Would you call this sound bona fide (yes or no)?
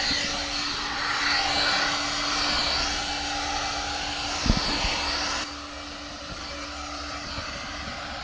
yes